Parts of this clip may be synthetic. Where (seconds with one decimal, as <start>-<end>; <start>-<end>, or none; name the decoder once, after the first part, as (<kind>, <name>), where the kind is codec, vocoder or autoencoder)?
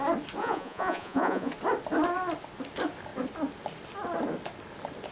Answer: 0.4-1.5 (vocoder, Vocos)